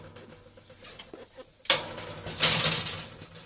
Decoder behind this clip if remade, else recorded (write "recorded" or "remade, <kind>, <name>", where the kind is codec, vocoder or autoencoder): recorded